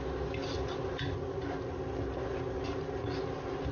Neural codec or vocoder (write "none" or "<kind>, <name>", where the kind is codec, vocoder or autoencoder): none